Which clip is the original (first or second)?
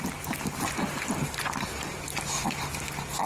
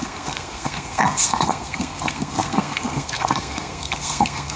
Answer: first